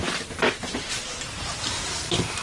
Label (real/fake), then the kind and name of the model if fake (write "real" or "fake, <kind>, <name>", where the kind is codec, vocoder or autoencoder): real